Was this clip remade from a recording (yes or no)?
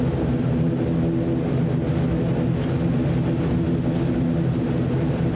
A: no